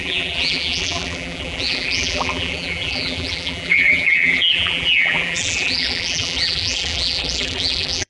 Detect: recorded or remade remade